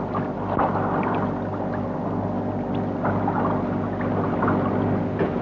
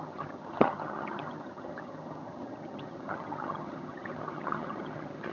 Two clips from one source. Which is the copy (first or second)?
second